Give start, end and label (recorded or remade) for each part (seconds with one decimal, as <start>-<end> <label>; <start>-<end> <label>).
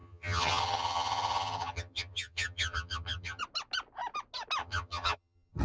0.0-3.4 remade; 3.4-4.6 recorded; 4.6-5.6 remade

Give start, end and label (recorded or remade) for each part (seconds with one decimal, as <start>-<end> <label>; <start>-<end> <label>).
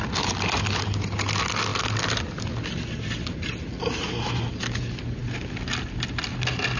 0.0-6.8 recorded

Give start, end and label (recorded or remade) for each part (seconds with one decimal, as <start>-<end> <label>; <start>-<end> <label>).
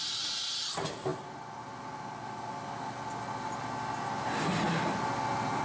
0.0-5.6 recorded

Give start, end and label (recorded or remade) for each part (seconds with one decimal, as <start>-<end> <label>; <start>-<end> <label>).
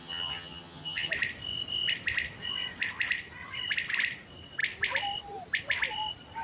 0.0-1.1 remade; 1.1-6.4 recorded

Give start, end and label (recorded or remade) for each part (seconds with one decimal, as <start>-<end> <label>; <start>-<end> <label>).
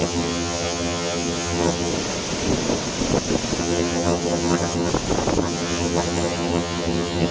0.0-1.9 remade; 1.9-3.6 recorded; 3.6-4.9 remade; 4.9-5.4 recorded; 5.4-7.3 remade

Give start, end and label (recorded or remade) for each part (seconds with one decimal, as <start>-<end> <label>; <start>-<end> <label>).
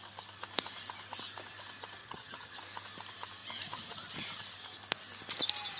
0.0-2.0 recorded; 2.0-2.6 remade; 2.6-5.8 recorded